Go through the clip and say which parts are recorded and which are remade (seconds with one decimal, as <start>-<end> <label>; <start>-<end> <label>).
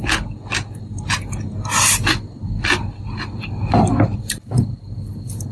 0.0-5.5 recorded